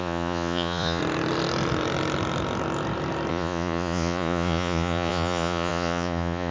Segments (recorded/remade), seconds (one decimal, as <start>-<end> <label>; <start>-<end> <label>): 0.0-1.0 remade; 1.0-3.3 recorded; 3.3-6.5 remade